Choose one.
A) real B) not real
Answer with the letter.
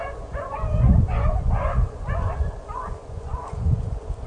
B